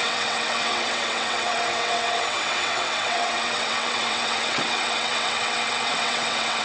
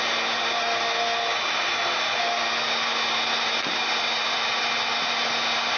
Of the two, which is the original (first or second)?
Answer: second